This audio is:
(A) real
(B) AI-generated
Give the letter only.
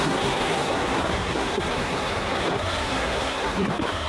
B